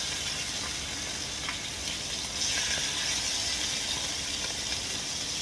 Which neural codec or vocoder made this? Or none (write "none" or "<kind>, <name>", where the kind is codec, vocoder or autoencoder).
none